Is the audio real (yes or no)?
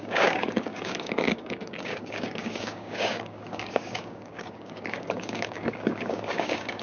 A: no